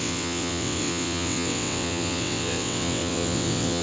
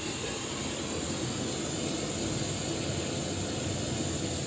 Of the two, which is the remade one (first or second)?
first